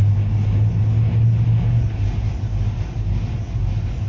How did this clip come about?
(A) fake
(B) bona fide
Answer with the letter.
B